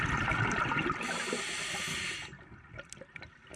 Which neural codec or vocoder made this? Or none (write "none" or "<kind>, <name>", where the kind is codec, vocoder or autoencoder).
none